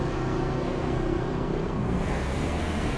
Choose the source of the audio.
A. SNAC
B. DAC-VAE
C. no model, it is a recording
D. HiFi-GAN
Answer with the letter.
A